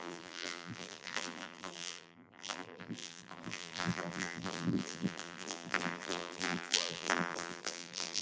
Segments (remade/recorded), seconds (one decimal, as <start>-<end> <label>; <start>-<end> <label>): 0.0-8.2 remade